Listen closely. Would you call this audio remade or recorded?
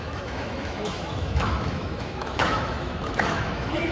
remade